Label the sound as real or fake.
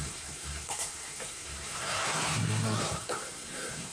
fake